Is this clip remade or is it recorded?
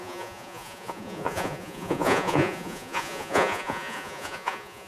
remade